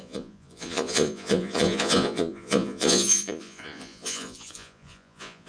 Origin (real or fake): fake